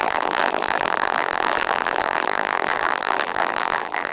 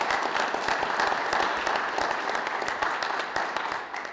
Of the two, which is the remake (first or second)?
first